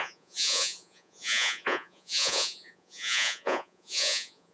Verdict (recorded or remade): remade